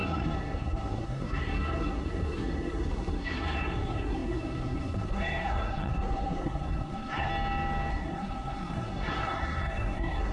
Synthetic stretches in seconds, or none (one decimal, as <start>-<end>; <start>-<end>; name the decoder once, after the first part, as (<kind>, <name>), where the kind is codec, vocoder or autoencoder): 0.0-7.3 (codec, SNAC); 7.9-10.3